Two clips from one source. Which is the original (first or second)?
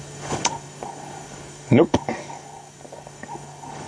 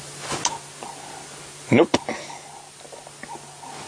second